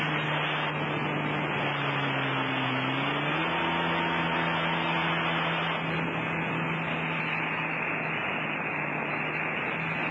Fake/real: real